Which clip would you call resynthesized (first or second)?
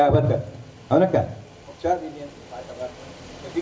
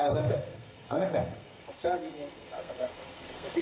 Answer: second